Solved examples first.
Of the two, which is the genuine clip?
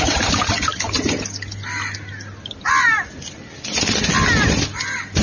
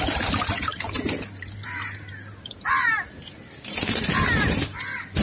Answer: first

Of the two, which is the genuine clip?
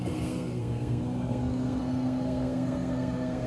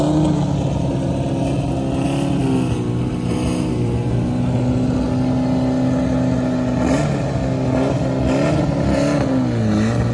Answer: second